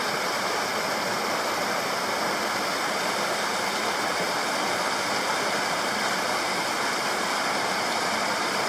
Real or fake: real